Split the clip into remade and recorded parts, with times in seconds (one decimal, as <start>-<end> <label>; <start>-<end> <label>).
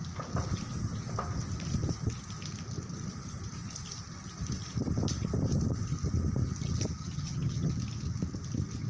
0.0-7.0 recorded; 7.0-7.7 remade; 7.7-8.9 recorded